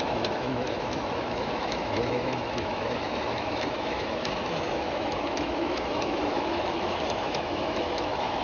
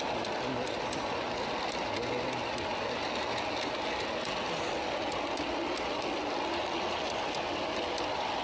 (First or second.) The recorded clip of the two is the second